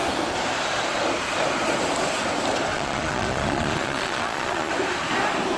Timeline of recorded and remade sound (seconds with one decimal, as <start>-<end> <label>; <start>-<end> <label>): 0.0-2.7 recorded; 2.7-4.7 remade; 4.7-5.6 recorded